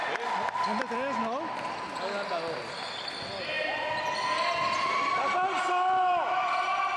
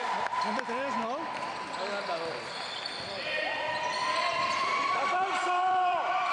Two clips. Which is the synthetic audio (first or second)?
second